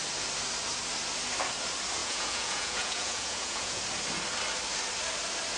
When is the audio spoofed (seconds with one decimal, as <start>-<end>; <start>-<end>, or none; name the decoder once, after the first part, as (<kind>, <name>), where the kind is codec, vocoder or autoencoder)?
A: 2.0-3.8 (vocoder, Vocos)